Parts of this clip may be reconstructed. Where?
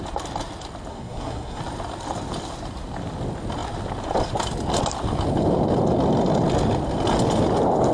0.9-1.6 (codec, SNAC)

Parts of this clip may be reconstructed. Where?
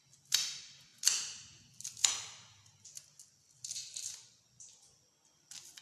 none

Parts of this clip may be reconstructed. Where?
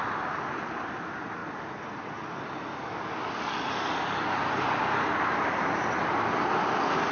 none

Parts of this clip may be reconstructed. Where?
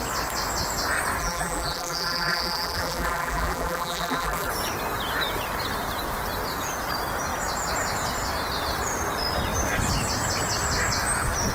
1.2-4.5 (vocoder, BigVGAN v2)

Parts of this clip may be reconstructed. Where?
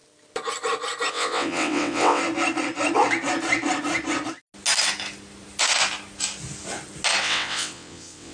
1.1-2.2 (vocoder, WaveNeXt); 7.2-8.3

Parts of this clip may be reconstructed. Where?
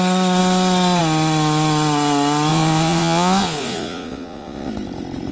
2.5-4.7 (vocoder, Vocos)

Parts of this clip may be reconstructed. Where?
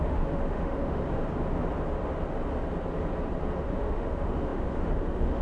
0.0-1.0 (autoencoder, DAC-VAE); 3.6-5.4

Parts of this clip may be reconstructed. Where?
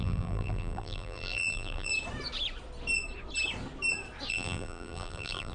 0.0-1.9 (vocoder, BigVGAN v2); 4.3-5.5